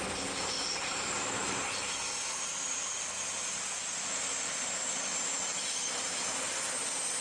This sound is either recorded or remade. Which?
recorded